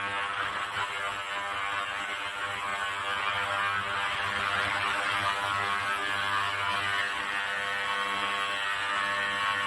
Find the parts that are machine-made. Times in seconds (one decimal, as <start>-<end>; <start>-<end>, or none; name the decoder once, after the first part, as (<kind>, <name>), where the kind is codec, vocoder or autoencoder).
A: none